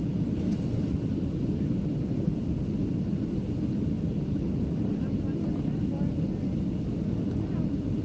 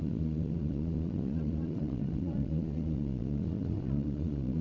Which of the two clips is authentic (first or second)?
first